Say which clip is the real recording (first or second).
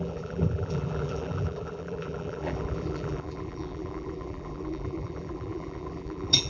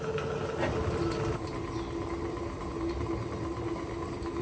second